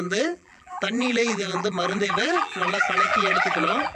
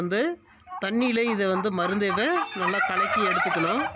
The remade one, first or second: first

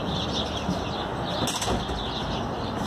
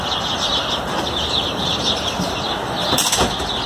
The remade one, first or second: second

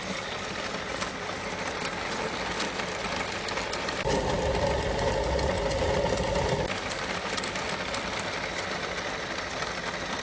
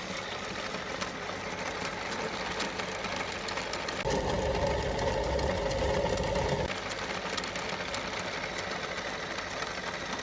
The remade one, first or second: first